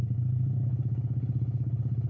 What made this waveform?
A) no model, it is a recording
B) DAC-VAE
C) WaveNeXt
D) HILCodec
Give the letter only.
D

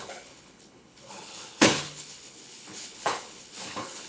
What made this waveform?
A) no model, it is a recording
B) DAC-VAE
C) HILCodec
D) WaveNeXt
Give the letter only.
C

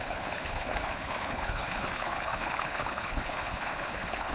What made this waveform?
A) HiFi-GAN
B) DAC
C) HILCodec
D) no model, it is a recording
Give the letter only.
C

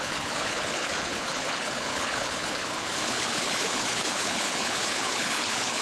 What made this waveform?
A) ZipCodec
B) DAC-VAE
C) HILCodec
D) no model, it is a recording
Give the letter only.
C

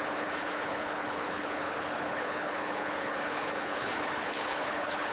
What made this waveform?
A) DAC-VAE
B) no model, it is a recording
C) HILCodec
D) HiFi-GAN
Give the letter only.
C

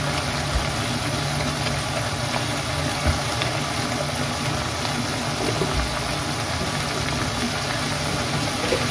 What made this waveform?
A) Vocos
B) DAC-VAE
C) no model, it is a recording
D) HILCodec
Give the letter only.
C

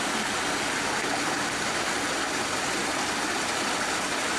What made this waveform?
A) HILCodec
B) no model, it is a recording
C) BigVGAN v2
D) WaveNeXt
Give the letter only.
B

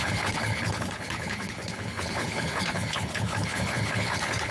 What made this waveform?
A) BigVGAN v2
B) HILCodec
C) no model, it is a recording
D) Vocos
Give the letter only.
B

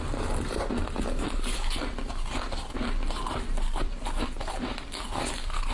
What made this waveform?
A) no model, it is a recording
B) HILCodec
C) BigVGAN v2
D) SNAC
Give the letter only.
A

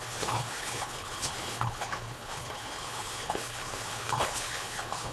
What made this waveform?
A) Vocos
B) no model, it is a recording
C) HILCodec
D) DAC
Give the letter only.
C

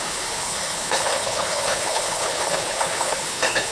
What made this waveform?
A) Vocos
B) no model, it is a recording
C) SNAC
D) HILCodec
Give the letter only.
D